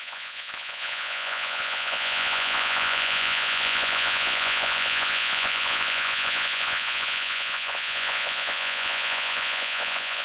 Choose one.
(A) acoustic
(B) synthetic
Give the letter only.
B